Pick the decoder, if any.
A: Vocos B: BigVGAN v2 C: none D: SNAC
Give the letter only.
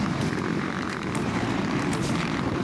B